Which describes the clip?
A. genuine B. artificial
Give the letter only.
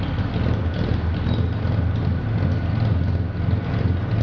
A